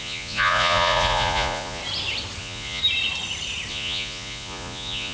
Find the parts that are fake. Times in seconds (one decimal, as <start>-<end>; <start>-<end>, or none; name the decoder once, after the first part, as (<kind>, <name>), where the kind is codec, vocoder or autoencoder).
0.0-1.8 (vocoder, Vocos); 2.4-2.8; 3.7-5.1